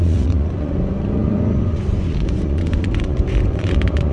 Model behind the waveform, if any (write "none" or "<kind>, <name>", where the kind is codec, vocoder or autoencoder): vocoder, Vocos